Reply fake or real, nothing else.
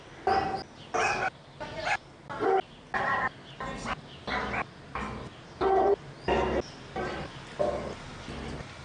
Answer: real